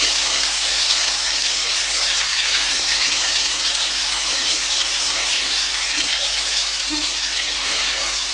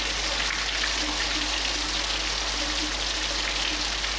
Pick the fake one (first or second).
first